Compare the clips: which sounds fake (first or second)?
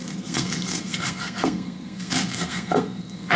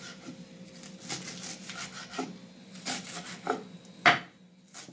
first